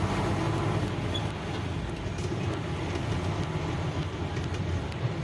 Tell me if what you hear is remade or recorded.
recorded